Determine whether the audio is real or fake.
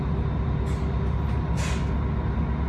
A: real